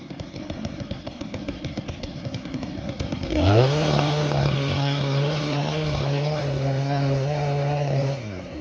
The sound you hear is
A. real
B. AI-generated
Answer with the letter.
B